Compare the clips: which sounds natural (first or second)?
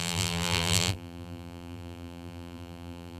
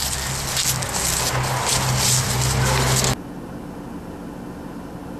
second